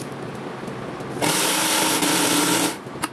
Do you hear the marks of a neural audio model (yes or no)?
no